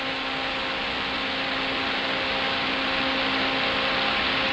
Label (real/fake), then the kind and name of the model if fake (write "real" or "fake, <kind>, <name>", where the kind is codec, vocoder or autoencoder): real